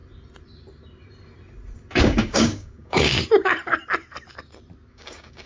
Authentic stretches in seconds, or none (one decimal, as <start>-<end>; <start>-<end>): 0.0-2.0; 3.1-4.9